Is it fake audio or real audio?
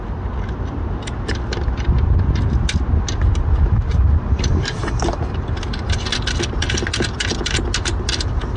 real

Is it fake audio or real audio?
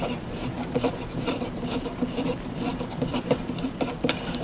fake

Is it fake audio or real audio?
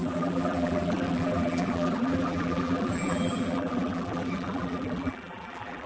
fake